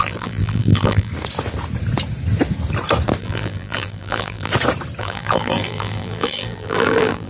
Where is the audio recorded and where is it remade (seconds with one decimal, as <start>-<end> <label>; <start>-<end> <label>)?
0.0-1.1 remade; 1.1-3.2 recorded; 3.2-4.5 remade; 4.5-5.0 recorded; 5.0-7.3 remade